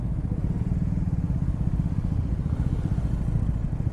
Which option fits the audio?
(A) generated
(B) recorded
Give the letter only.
B